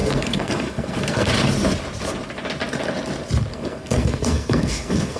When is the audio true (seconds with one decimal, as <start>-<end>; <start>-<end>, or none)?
1.3-3.5